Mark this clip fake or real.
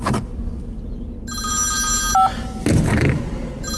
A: real